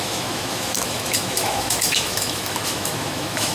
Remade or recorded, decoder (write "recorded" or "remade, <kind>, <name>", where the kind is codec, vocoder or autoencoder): remade, autoencoder, DAC-VAE